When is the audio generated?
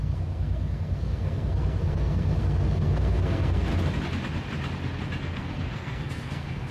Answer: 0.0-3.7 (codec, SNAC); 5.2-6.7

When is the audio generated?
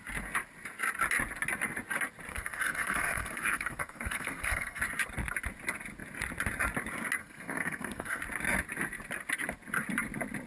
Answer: 2.3-4.8 (codec, SNAC); 7.2-8.2